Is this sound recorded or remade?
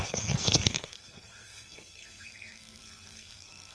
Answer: remade